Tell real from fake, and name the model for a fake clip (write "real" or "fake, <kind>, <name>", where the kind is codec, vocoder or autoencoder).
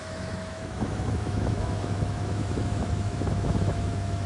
fake, autoencoder, DAC-VAE